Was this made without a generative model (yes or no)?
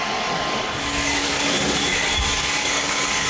no